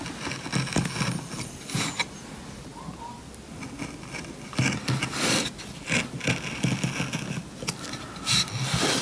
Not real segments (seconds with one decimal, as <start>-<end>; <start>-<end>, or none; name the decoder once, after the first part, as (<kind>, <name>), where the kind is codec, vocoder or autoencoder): none